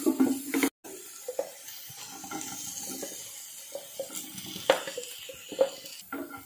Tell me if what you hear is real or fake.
real